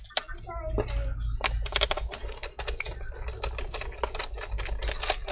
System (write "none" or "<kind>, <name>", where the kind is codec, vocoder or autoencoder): none